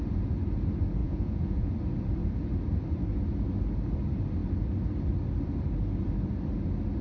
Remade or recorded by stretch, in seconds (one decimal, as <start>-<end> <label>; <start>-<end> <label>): 0.0-1.0 recorded; 1.0-1.7 remade; 1.7-7.0 recorded